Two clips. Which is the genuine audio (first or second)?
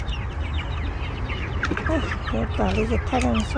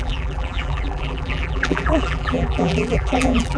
first